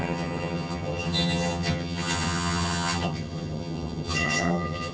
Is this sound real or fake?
fake